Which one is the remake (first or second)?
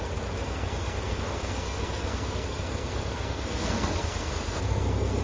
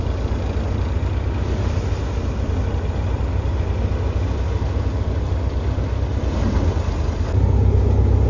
first